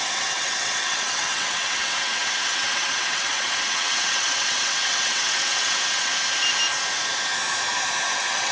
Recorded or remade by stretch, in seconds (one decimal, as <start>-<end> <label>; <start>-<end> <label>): 0.0-6.1 remade; 6.1-8.1 recorded; 8.1-8.5 remade